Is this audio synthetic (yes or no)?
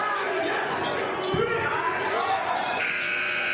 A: yes